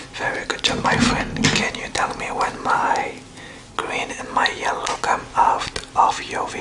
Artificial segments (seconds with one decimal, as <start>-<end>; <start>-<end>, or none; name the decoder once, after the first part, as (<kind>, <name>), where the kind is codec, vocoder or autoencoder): none